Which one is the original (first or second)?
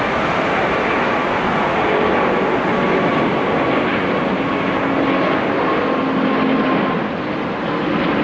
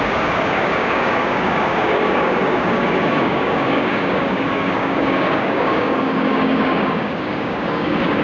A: first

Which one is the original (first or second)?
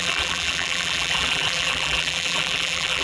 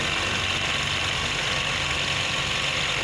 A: second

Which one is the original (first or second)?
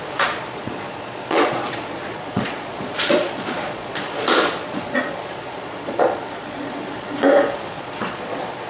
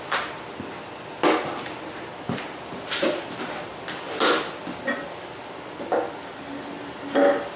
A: second